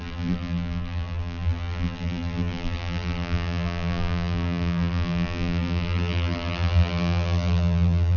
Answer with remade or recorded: remade